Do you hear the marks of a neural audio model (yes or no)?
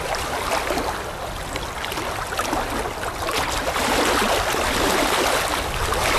no